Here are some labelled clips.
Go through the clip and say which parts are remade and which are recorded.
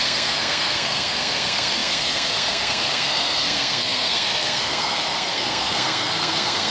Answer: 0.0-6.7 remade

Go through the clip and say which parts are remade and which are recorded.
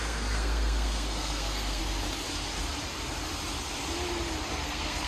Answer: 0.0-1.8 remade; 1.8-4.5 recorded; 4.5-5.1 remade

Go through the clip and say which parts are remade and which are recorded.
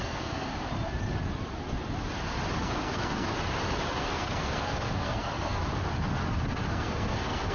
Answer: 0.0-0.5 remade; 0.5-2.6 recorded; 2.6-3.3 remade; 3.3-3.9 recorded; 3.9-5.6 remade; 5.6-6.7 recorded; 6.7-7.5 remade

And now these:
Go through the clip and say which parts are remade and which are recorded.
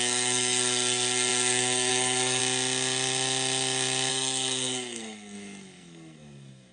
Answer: 0.0-2.4 remade; 2.4-4.1 recorded; 4.1-6.7 remade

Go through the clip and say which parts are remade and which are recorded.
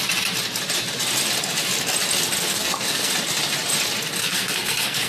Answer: 0.0-2.4 recorded; 2.4-3.1 remade; 3.1-4.2 recorded; 4.2-5.1 remade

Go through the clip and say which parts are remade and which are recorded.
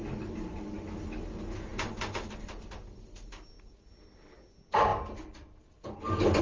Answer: 0.0-6.4 recorded